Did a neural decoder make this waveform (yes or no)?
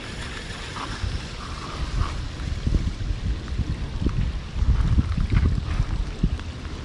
no